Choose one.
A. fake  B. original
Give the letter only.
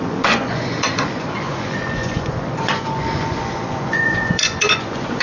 A